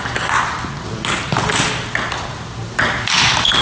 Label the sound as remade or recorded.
recorded